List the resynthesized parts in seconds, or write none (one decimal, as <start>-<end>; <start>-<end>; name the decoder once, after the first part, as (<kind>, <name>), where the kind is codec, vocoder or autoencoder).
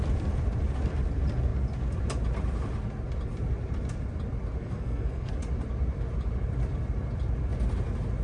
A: 4.6-5.3 (codec, SNAC)